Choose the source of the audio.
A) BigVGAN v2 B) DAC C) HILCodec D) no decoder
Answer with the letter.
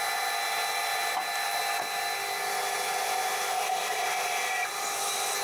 D